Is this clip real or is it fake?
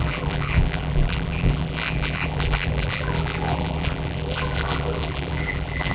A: fake